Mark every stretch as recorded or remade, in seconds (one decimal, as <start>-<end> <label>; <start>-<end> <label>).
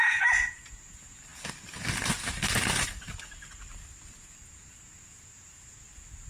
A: 0.0-1.3 remade; 1.3-4.2 recorded; 4.2-6.3 remade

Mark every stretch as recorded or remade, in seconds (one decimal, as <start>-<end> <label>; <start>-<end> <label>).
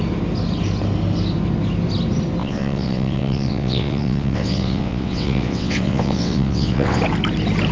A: 0.0-2.4 recorded; 2.4-7.0 remade; 7.0-7.7 recorded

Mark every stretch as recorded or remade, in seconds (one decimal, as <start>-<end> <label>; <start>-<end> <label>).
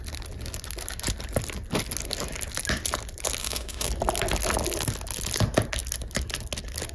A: 0.0-3.4 recorded; 3.4-3.9 remade; 3.9-6.9 recorded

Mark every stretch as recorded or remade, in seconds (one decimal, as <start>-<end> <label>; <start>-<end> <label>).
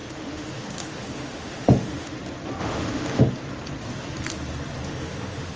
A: 0.0-2.2 remade; 2.2-2.6 recorded; 2.6-3.2 remade; 3.2-4.8 recorded; 4.8-5.6 remade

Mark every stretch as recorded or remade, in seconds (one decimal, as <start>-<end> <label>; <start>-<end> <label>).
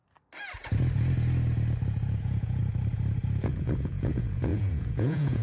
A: 0.0-2.2 recorded; 2.2-2.6 remade; 2.6-3.4 recorded; 3.4-5.4 remade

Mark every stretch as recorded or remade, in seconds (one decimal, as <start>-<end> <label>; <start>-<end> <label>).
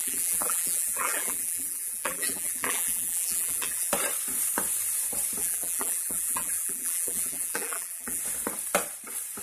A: 0.0-3.9 remade; 3.9-5.4 recorded; 5.4-8.2 remade; 8.2-9.4 recorded